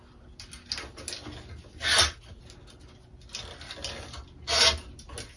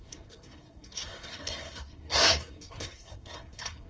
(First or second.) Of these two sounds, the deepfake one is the second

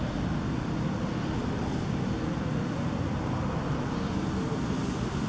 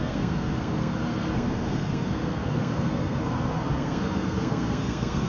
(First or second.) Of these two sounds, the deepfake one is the second